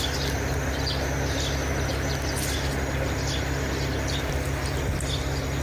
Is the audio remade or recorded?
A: remade